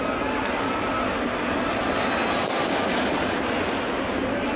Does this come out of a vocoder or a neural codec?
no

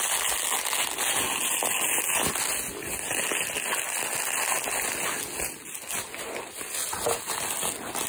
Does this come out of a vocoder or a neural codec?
no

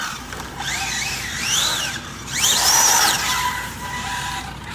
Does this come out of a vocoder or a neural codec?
yes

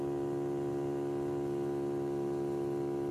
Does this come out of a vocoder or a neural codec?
no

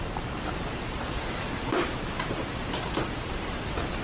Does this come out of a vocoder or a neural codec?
yes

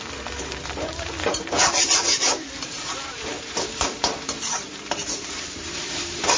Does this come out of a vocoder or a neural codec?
yes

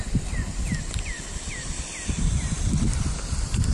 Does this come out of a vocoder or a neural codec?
no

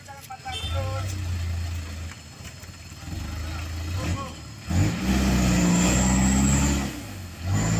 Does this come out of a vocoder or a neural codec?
no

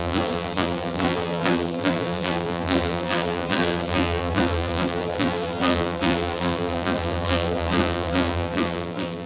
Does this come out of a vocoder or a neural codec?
yes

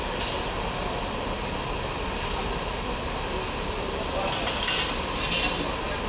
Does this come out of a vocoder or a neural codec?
no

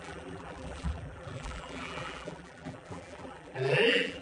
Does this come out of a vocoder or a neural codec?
yes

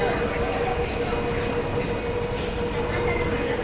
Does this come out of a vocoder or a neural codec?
no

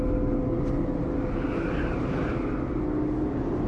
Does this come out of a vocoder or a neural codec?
no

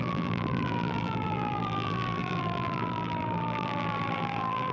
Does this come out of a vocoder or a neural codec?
yes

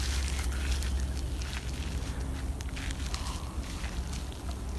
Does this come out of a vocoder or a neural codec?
no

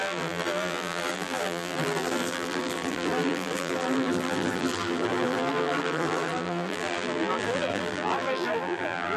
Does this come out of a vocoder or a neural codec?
yes